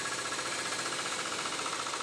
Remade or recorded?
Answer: recorded